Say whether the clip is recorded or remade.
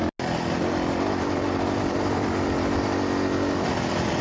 recorded